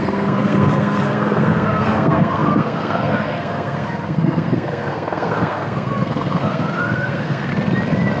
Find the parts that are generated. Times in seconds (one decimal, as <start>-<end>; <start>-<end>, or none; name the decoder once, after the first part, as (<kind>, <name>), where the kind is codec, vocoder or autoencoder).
0.0-7.5 (codec, SNAC)